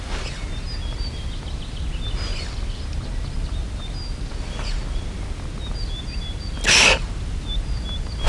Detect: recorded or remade recorded